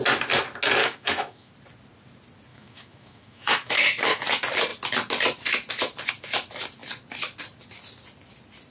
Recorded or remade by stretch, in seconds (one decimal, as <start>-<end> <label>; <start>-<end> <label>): 0.0-0.8 recorded; 0.8-1.5 remade; 1.5-2.5 recorded; 2.5-4.0 remade; 4.0-8.7 recorded

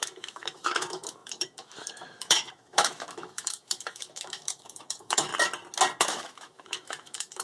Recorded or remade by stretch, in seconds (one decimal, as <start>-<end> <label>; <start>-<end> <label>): 0.0-5.3 remade; 5.3-6.0 recorded; 6.0-7.4 remade

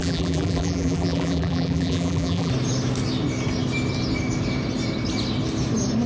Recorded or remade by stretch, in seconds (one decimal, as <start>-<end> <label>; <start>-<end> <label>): 0.0-2.5 remade; 2.5-6.1 recorded

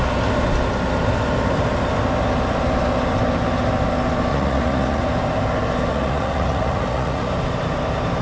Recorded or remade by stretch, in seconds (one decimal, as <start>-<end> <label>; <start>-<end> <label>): 0.0-4.3 recorded; 4.3-5.0 remade; 5.0-5.9 recorded; 5.9-7.3 remade; 7.3-8.2 recorded

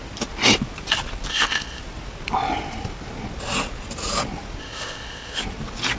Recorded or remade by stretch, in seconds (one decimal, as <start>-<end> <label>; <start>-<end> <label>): 0.0-1.3 recorded; 1.3-1.8 remade; 1.8-4.6 recorded; 4.6-5.4 remade; 5.4-6.0 recorded